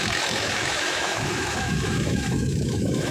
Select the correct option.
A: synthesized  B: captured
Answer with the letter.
A